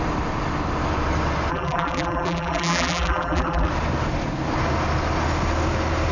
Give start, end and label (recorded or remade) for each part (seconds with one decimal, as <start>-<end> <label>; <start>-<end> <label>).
0.0-1.5 recorded; 1.5-3.7 remade; 3.7-6.1 recorded